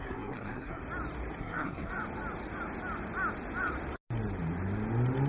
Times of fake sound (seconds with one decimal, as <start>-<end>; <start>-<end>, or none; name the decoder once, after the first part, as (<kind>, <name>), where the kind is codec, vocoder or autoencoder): 0.0-0.8 (codec, SNAC); 1.4-1.9